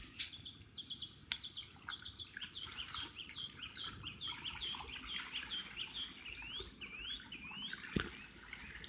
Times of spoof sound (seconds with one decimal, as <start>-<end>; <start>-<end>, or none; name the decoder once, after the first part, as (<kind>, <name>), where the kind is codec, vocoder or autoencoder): 1.9-4.4 (vocoder, BigVGAN v2)

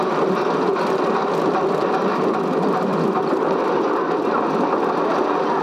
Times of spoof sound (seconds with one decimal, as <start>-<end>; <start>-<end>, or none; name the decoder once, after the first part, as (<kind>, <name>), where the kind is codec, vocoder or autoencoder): 0.7-1.6 (vocoder, BigVGAN v2)

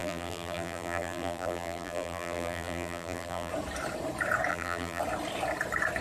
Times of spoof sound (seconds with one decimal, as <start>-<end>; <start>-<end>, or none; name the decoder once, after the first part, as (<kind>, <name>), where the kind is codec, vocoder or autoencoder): 0.0-3.5 (vocoder, BigVGAN v2); 4.5-5.0

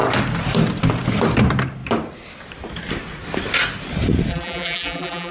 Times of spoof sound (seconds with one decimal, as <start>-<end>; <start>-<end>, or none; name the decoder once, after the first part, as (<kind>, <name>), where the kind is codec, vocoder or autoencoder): 4.3-5.3 (vocoder, BigVGAN v2)